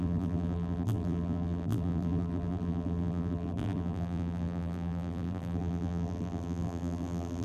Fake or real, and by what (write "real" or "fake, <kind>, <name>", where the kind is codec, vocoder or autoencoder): fake, vocoder, BigVGAN v2